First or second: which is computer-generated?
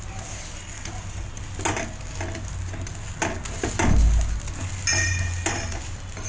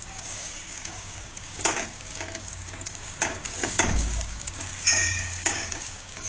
second